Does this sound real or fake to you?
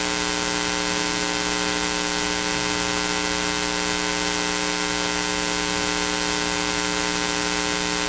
real